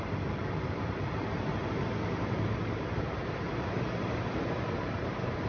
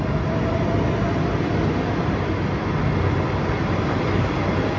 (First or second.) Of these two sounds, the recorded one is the second